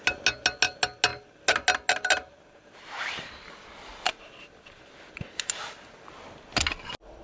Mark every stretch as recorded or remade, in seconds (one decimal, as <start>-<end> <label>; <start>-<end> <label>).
0.0-7.2 recorded